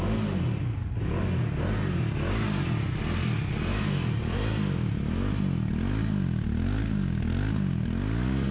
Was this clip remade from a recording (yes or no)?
no